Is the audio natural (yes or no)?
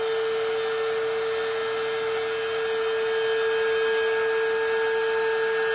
yes